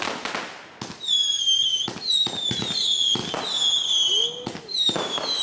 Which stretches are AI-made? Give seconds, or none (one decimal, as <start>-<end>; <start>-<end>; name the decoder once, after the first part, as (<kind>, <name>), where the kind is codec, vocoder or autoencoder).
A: none